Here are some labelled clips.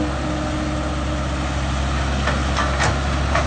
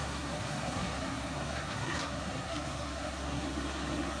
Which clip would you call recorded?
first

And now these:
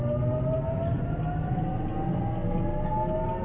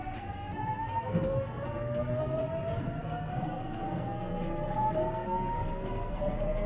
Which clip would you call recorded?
first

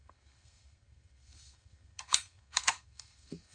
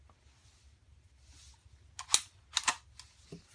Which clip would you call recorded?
second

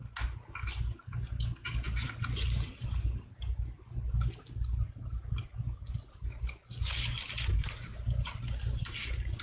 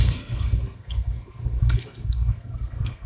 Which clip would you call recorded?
first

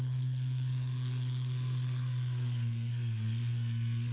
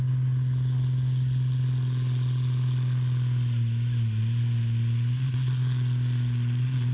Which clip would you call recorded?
second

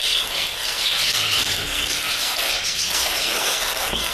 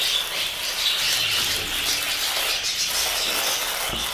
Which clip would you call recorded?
second